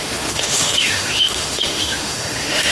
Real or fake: fake